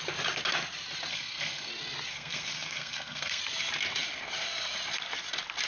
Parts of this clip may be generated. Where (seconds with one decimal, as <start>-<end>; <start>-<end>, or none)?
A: 1.1-1.7; 2.1-3.4